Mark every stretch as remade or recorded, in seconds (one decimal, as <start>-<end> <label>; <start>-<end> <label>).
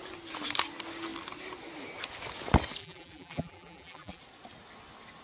0.0-2.8 recorded; 2.8-4.2 remade; 4.2-5.2 recorded